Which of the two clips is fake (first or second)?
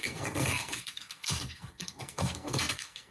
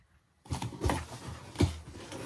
first